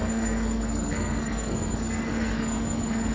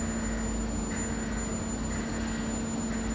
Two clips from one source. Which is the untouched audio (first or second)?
second